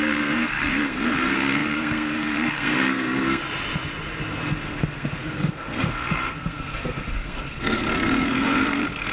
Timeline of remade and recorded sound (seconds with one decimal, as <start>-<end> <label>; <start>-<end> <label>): 0.0-3.4 remade; 3.4-4.6 recorded; 4.6-9.1 remade